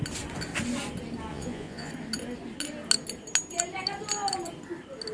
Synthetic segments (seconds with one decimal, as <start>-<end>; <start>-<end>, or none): 1.3-1.9